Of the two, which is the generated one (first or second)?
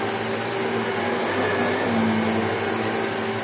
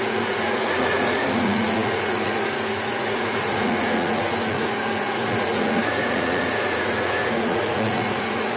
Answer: second